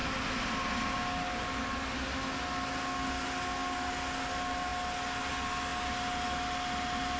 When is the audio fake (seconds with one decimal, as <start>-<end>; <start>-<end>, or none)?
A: none